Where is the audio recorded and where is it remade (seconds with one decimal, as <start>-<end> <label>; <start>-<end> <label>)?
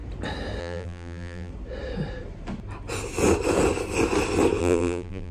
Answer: 0.0-0.6 recorded; 0.6-1.5 remade; 1.5-4.6 recorded; 4.6-5.3 remade